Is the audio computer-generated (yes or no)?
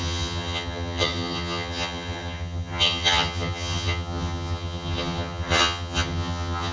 yes